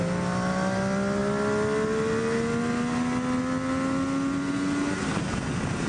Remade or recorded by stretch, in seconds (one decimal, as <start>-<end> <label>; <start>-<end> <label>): 0.0-5.9 recorded